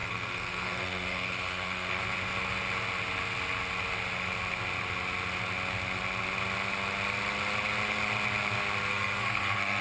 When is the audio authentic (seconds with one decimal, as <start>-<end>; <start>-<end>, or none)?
2.0-8.9